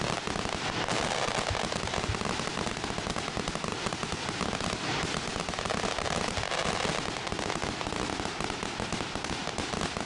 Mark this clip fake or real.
real